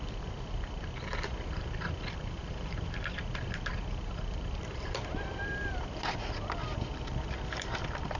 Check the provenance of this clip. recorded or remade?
remade